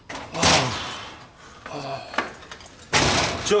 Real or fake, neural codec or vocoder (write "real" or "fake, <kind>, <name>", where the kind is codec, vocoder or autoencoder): real